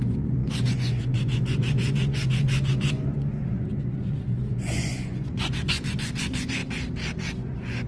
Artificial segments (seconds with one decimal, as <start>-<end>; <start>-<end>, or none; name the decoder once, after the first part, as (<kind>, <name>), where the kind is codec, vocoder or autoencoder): 0.0-6.6 (vocoder, Vocos); 7.4-7.9